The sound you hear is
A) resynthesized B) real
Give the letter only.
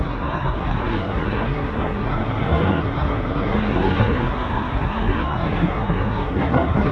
A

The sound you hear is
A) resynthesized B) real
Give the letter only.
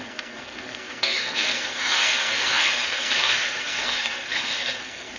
A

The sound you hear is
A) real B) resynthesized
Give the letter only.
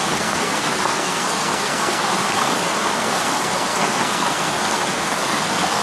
B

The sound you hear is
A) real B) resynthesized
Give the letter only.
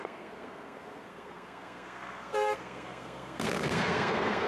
B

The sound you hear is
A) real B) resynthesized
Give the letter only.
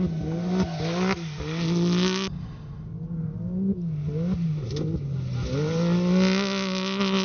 A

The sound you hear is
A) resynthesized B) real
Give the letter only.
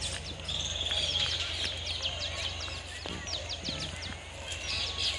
B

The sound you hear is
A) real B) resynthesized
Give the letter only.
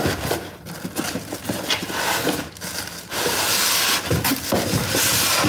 A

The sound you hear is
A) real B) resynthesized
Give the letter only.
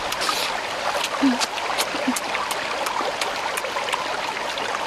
A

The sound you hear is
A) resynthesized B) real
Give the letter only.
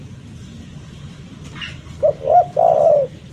B